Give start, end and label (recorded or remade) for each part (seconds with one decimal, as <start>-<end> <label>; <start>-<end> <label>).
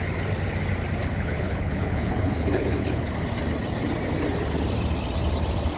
0.0-1.0 recorded; 1.0-3.1 remade; 3.1-5.8 recorded